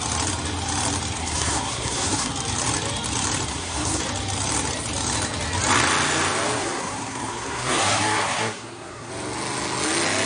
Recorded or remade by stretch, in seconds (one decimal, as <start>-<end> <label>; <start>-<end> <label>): 0.0-1.2 recorded; 1.2-2.3 remade; 2.3-3.5 recorded; 3.5-4.0 remade; 4.0-6.6 recorded; 6.6-9.1 remade; 9.1-10.3 recorded